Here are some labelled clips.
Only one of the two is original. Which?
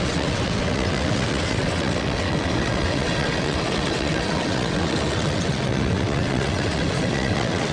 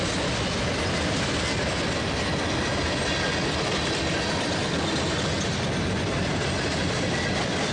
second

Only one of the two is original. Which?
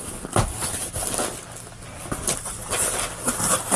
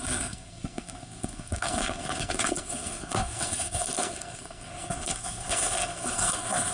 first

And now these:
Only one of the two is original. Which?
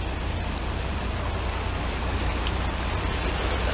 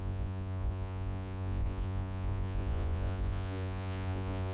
first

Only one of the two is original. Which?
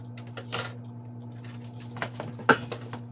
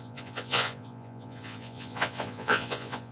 first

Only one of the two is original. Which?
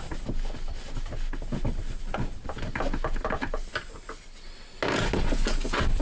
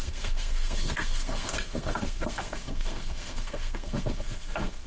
first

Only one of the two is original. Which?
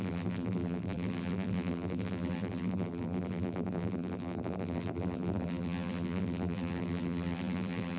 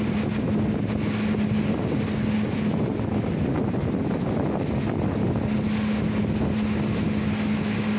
second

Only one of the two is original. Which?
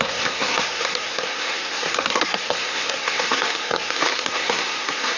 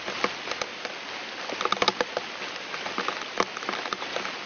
second